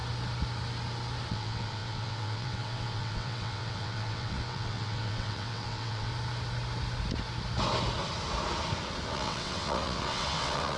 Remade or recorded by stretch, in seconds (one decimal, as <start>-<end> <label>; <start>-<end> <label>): 0.0-1.3 recorded; 1.3-6.1 remade; 6.1-9.1 recorded; 9.1-10.8 remade